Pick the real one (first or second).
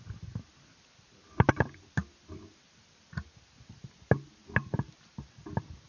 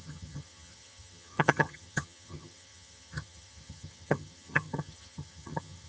first